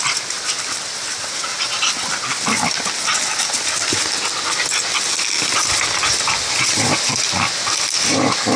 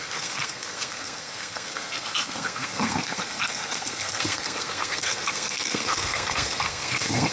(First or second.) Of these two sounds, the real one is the first